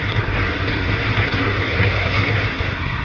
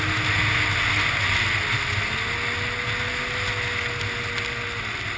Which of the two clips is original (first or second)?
second